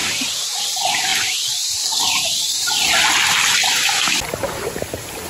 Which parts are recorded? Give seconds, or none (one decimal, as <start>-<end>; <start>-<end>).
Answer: 0.0-1.1; 3.1-5.3